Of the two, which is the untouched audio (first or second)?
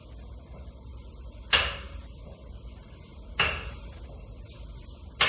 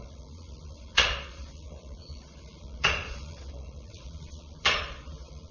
first